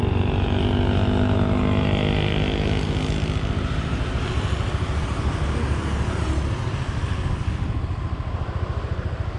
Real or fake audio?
real